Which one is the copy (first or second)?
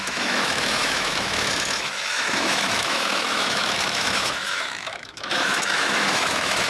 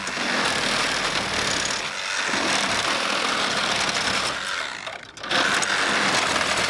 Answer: first